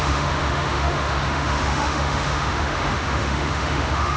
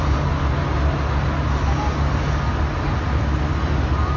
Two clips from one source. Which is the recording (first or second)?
second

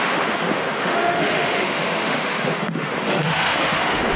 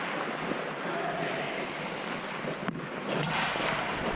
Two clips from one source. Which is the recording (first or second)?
second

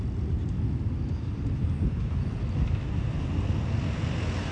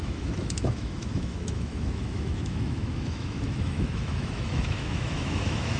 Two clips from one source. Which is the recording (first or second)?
first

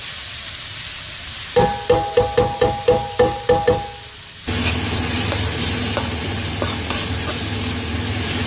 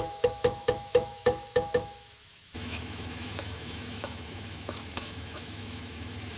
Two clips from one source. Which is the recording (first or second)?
first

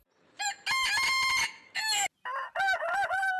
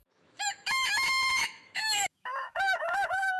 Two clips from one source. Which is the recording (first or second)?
first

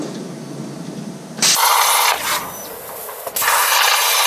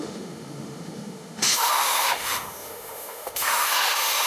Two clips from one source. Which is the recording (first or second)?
first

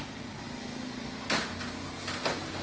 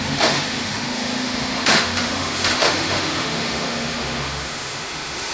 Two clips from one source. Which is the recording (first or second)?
first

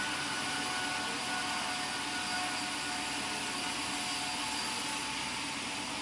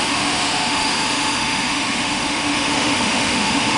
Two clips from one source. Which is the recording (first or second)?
first